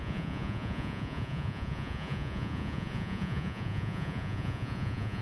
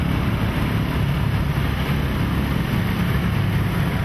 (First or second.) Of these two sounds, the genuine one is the second